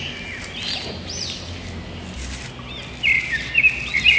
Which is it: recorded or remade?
recorded